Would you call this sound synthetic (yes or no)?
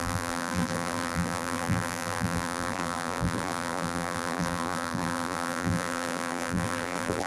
yes